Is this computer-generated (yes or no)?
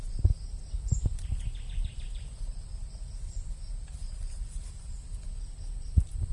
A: yes